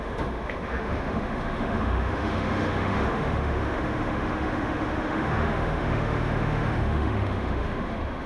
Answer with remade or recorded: remade